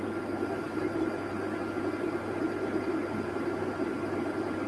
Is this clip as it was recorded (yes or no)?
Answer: yes